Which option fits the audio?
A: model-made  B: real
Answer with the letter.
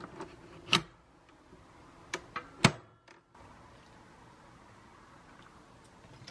B